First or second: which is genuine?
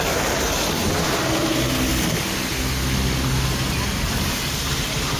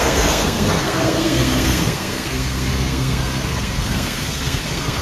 first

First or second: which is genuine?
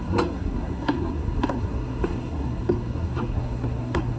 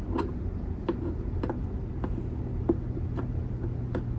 second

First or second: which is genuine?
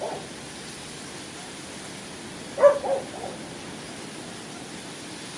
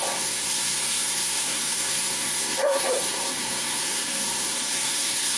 first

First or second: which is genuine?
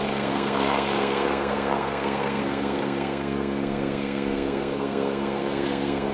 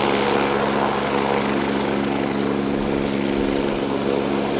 second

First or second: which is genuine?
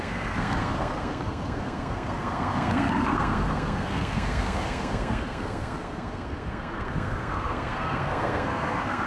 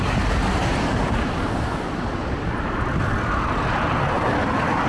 second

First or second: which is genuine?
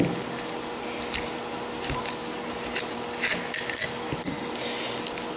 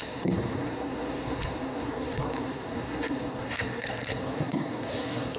first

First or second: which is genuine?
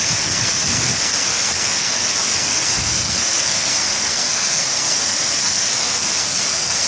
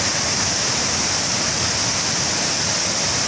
second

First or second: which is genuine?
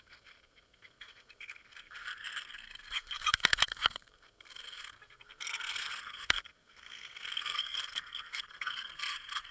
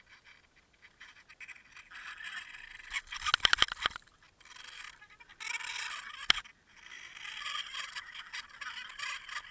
second